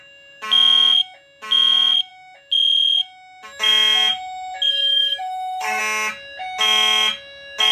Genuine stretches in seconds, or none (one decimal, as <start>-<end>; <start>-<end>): 0.0-4.7; 5.8-7.7